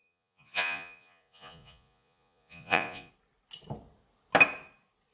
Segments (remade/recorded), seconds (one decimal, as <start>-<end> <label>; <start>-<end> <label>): 0.0-3.1 remade; 3.1-5.1 recorded